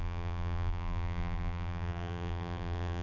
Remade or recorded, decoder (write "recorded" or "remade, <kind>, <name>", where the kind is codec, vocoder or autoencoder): remade, vocoder, BigVGAN v2